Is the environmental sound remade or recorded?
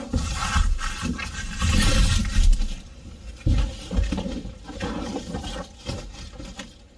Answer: recorded